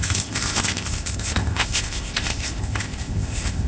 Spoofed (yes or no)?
yes